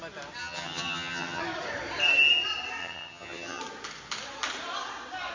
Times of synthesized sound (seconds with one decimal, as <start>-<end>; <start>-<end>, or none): 0.4-1.4; 2.8-3.6